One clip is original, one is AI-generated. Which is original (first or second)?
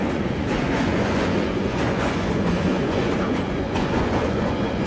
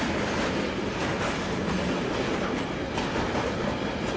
second